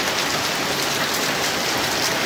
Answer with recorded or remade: recorded